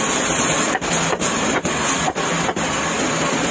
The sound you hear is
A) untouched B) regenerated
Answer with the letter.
A